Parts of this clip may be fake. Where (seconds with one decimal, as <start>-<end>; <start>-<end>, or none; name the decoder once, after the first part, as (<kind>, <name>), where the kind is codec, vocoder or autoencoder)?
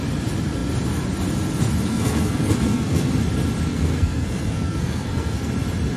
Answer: 1.9-3.1 (codec, SNAC); 3.7-5.5